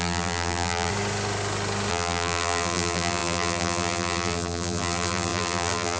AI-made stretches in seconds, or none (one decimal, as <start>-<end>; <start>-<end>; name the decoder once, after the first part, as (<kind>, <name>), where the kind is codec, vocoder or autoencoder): 0.0-0.9 (vocoder, BigVGAN v2); 1.9-6.0